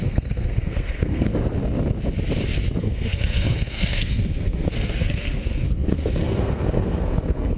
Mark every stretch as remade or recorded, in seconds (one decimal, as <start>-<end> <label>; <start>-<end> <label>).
0.0-1.3 remade; 1.3-2.8 recorded; 2.8-7.6 remade